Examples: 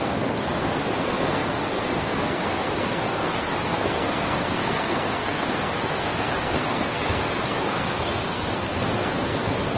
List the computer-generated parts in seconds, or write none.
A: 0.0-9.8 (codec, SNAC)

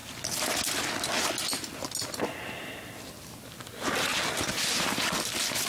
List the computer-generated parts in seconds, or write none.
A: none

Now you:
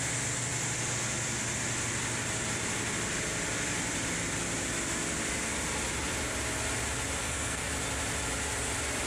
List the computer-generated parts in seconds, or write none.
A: 7.2-7.7 (codec, SNAC)

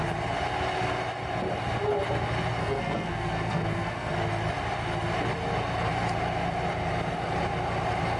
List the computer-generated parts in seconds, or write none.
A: 2.6-4.1 (codec, SNAC)